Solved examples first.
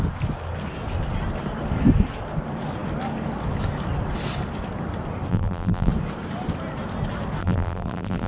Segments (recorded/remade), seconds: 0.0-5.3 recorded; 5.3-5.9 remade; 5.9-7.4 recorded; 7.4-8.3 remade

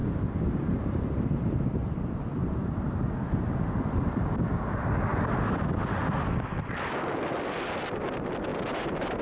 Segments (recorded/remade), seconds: 0.0-8.5 recorded; 8.5-9.2 remade

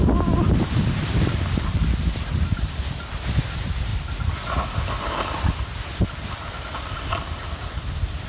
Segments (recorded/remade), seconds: 0.0-3.9 remade; 3.9-6.8 recorded; 6.8-8.3 remade

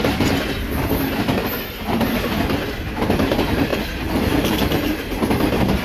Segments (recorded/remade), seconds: 0.0-3.7 recorded; 3.7-5.2 remade; 5.2-5.8 recorded

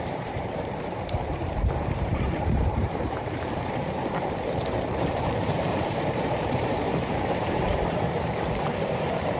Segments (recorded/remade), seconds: 0.0-9.4 remade

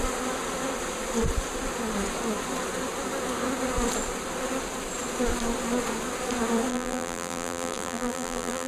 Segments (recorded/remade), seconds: 0.0-6.7 recorded; 6.7-8.7 remade

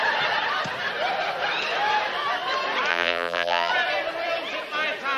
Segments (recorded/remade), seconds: 0.0-2.9 recorded; 2.9-3.7 remade; 3.7-5.2 recorded

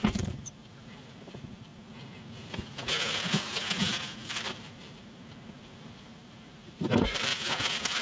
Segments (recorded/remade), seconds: 0.0-1.7 remade; 1.7-4.3 recorded; 4.3-7.3 remade; 7.3-8.0 recorded